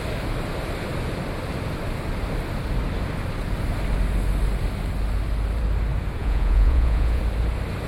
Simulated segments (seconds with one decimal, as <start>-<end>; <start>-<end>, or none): 6.2-7.2

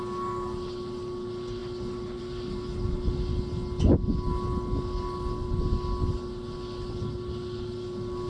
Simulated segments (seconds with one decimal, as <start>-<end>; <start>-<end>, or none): none

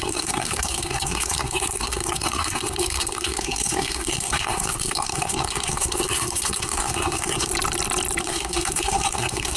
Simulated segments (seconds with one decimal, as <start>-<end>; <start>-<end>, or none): 0.0-7.5; 8.2-9.6

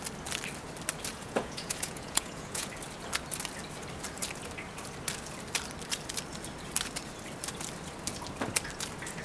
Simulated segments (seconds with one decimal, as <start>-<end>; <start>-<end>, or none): 1.1-2.7

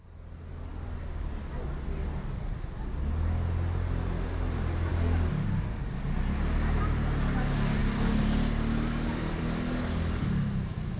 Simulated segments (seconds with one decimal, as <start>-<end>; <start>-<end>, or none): none

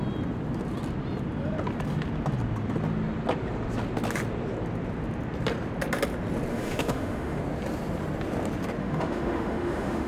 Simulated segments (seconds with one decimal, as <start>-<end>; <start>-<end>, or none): 6.5-7.4; 8.8-10.1

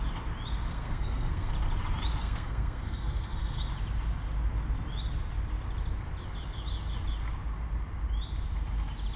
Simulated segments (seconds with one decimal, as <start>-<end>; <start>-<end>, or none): 0.7-1.5; 2.2-3.6